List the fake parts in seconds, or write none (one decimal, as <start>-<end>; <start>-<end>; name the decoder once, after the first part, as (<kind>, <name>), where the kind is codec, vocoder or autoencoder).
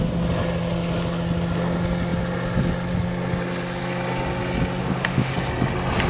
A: 4.8-5.3 (autoencoder, DAC-VAE)